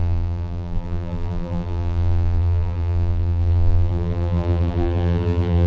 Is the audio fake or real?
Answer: fake